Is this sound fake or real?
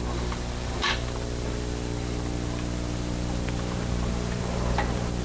real